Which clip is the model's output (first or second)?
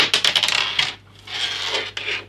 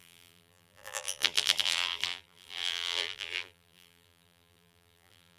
second